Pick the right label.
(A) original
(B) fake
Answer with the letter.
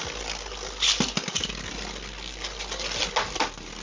A